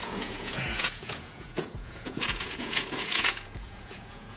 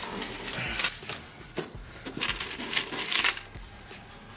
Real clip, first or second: second